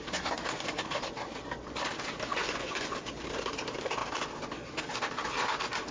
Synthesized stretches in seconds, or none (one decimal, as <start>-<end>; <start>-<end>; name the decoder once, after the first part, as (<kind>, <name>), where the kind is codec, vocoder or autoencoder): 2.3-2.9 (vocoder, Vocos)